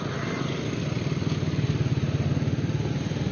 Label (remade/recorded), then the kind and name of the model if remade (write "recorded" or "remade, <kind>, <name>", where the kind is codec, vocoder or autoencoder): recorded